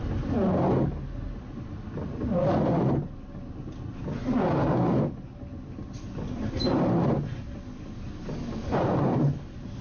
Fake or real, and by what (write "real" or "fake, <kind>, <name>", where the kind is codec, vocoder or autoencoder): real